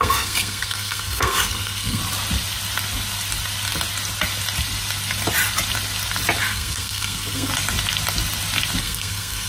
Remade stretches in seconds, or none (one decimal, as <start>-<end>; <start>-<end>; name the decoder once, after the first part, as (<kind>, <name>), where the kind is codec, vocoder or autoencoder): 0.0-2.0 (codec, SNAC); 6.4-7.5; 8.8-9.5